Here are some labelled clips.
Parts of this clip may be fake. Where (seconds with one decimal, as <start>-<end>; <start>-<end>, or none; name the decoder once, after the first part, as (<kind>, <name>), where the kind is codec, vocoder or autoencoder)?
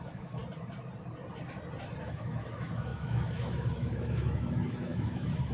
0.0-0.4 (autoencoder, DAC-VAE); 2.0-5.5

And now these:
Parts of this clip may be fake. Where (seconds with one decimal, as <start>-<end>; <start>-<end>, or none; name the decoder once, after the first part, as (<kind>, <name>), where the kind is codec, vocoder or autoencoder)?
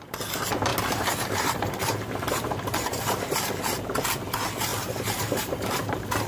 0.7-3.6 (vocoder, BigVGAN v2); 4.7-6.3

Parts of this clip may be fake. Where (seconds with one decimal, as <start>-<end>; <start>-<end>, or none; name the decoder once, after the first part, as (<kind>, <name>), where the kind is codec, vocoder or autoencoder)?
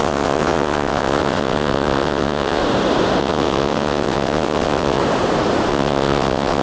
0.0-2.6 (vocoder, WaveNeXt); 3.2-5.0; 5.7-6.6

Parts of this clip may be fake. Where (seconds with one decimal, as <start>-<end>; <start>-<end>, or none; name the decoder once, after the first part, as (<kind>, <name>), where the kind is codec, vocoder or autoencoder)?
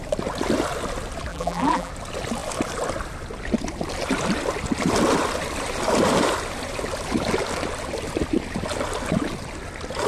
1.3-1.9 (vocoder, BigVGAN v2)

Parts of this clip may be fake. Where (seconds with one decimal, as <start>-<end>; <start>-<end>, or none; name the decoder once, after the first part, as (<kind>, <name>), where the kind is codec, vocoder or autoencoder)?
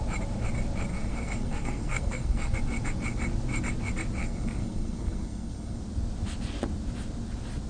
0.9-2.6 (codec, SNAC); 4.2-5.8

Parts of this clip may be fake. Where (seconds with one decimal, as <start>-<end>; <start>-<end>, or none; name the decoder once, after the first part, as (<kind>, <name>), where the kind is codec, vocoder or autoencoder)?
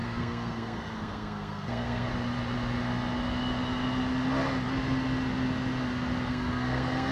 0.0-2.1 (codec, SNAC); 6.3-7.1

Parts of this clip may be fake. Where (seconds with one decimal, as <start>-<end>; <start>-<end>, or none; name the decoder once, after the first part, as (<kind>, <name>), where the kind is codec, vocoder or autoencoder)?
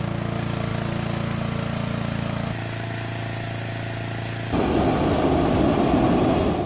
none